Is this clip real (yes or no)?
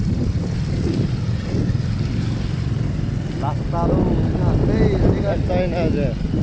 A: yes